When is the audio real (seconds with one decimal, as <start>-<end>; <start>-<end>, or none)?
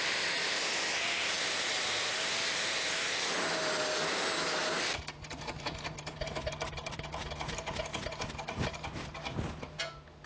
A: 0.0-10.3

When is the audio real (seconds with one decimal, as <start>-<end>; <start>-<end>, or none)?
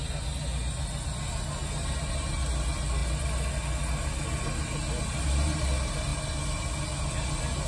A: 0.0-7.7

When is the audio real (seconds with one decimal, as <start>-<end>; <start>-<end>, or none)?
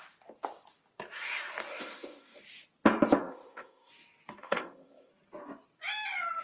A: 0.0-1.7; 2.4-3.2; 3.9-4.4; 5.1-6.4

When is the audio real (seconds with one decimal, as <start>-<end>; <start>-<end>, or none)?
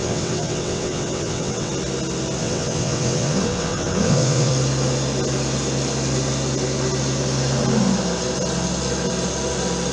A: 1.7-2.4; 4.5-9.9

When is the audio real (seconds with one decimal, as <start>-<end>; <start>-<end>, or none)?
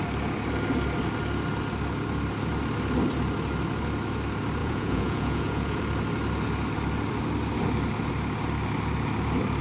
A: 0.0-4.6; 5.8-9.6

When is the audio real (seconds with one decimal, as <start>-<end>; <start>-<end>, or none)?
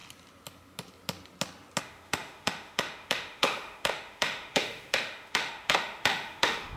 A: 0.0-1.8